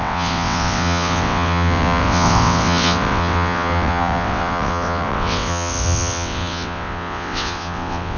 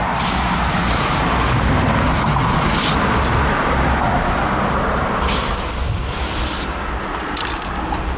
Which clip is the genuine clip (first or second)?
second